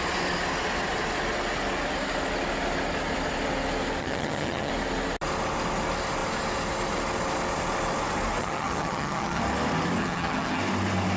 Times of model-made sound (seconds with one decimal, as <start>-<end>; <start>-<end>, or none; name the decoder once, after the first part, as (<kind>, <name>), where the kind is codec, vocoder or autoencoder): 4.0-4.7 (vocoder, HiFi-GAN); 8.4-9.4; 10.0-10.6